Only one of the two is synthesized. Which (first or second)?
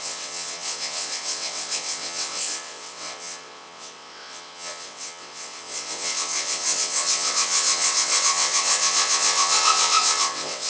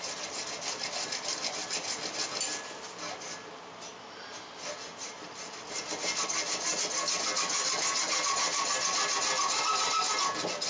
first